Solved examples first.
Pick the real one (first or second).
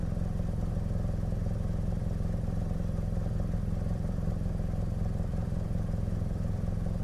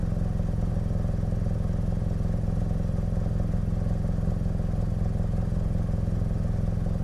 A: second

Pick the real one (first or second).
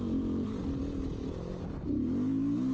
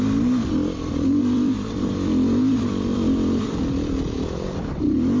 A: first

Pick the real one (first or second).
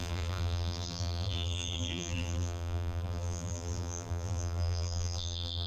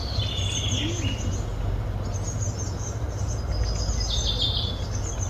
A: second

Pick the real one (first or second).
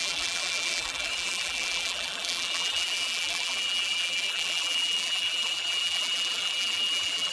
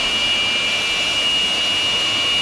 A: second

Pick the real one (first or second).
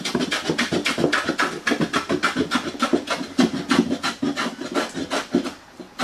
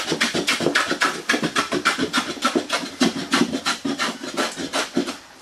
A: first